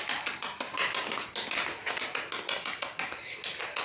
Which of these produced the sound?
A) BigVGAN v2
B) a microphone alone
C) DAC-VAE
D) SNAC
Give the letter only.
B